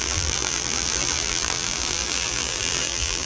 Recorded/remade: remade